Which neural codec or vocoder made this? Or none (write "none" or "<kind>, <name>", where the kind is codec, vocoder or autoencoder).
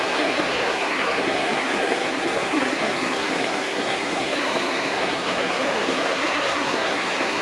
codec, SNAC